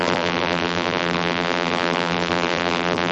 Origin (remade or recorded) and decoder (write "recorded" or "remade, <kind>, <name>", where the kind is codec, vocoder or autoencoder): remade, vocoder, BigVGAN v2